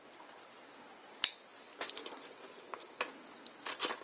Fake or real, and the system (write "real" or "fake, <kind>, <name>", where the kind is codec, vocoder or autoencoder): fake, vocoder, BigVGAN v2